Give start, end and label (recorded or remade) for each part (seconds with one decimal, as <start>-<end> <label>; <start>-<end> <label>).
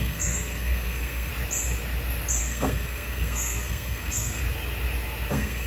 0.0-1.3 remade; 1.3-2.4 recorded; 2.4-4.4 remade; 4.4-5.3 recorded; 5.3-5.7 remade